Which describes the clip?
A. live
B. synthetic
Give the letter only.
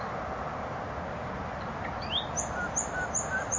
A